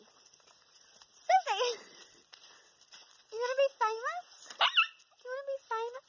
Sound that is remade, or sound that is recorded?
recorded